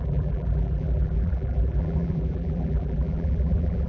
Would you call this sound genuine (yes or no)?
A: no